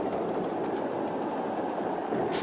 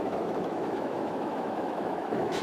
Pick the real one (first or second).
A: first